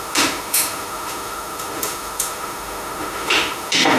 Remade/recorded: remade